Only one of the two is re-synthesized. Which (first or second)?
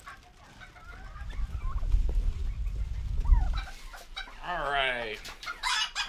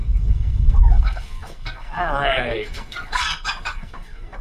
second